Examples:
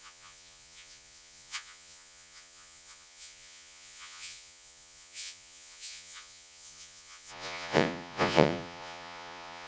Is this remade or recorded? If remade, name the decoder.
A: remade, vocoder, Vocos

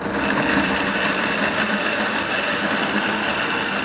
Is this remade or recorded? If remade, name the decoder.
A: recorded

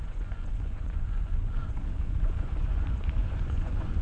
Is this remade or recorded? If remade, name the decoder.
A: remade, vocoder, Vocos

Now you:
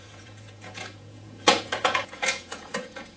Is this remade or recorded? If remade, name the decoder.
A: remade, vocoder, Vocos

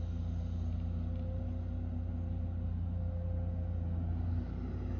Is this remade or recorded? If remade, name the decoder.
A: recorded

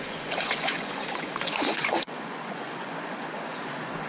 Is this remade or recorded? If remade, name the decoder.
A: remade, vocoder, Vocos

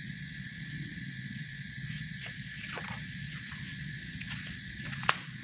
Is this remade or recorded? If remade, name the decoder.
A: remade, vocoder, Vocos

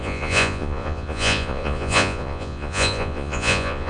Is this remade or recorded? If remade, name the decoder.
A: remade, vocoder, Vocos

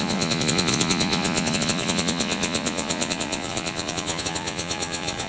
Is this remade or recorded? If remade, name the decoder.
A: remade, vocoder, Vocos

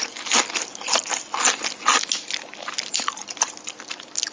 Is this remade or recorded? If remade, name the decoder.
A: recorded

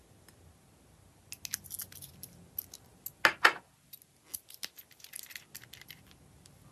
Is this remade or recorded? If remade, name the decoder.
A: recorded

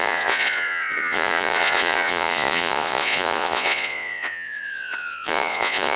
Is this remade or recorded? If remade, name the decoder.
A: remade, vocoder, Vocos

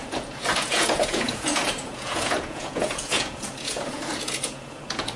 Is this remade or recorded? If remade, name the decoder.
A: remade, vocoder, Vocos